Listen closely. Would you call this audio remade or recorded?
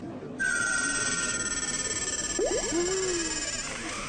recorded